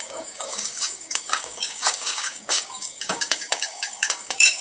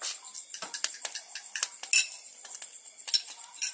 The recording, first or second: second